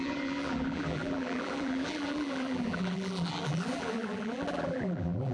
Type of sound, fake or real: fake